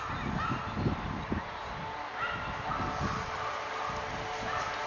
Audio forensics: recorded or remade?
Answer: recorded